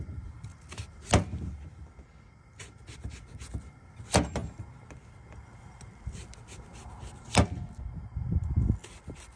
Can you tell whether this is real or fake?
real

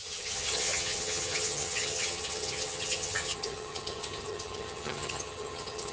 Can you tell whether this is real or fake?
fake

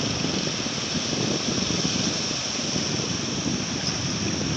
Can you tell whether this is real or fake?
real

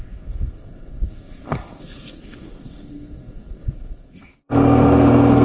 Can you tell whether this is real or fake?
fake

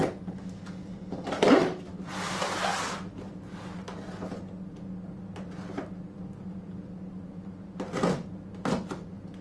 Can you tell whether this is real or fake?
real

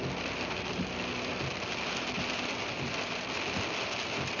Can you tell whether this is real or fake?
real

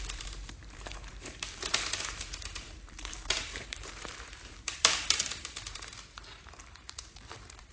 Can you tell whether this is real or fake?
fake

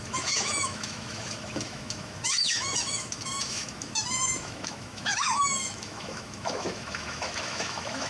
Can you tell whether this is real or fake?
fake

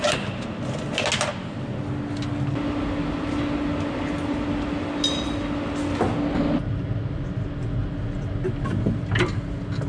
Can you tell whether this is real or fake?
real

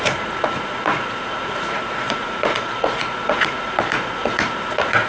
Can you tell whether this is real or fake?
fake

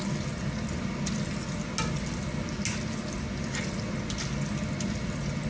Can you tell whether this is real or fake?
real